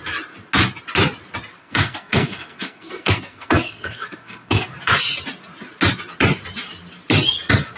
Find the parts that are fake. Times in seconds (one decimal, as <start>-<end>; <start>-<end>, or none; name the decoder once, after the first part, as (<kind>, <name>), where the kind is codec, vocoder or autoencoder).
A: 1.6-4.7 (codec, SNAC)